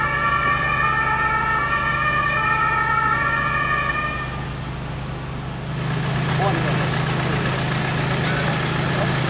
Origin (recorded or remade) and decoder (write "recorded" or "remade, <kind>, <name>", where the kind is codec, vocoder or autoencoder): recorded